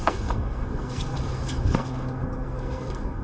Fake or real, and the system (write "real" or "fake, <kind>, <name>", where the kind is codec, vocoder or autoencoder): fake, codec, SNAC